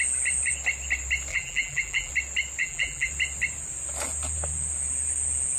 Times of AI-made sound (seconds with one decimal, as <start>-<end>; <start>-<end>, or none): 1.3-2.1; 2.6-3.1